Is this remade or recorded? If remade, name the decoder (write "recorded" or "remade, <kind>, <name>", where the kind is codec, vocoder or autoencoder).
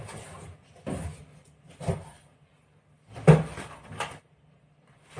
recorded